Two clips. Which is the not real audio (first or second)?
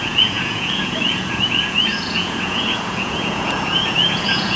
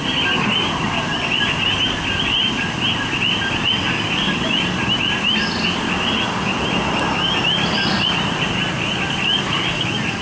first